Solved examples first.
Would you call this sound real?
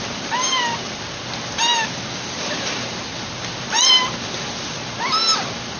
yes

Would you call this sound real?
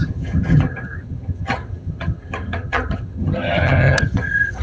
no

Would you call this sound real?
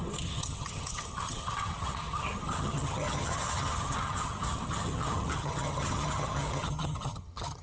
no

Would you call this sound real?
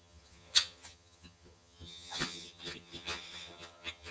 no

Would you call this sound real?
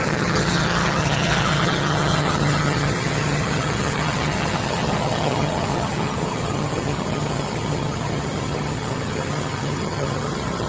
no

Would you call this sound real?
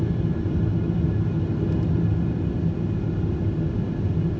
yes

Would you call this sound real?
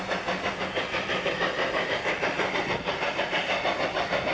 yes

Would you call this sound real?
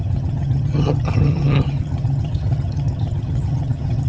no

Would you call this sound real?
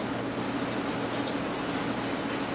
yes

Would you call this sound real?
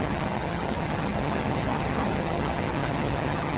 no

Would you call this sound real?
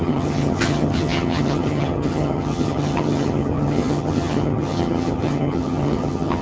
no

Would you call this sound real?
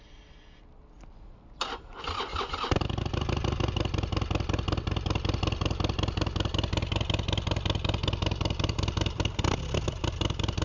yes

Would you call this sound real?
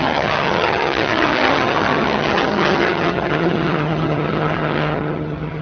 no